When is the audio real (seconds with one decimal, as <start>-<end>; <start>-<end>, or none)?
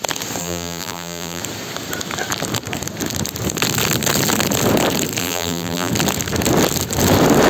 0.0-0.4; 1.4-5.2; 5.9-7.5